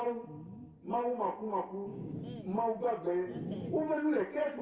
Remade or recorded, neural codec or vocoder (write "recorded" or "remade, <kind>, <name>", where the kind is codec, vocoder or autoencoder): recorded